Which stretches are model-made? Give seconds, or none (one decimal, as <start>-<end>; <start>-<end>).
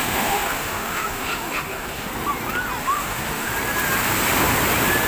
0.0-2.1; 2.8-3.5